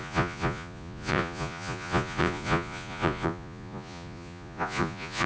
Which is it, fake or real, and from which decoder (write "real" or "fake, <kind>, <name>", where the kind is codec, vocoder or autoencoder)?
fake, vocoder, Vocos